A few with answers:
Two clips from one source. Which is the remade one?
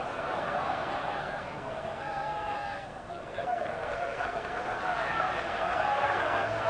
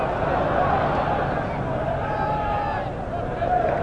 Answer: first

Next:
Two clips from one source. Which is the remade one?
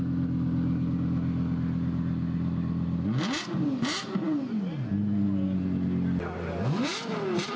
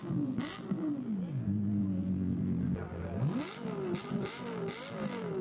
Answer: second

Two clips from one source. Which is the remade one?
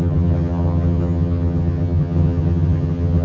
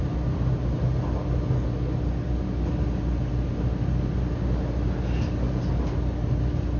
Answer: first